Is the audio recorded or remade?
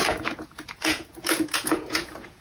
remade